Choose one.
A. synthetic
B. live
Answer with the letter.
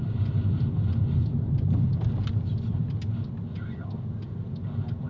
B